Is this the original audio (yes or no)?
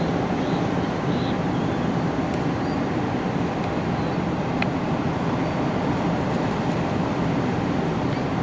yes